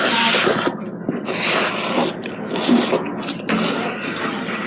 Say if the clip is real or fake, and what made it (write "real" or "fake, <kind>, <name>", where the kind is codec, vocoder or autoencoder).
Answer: real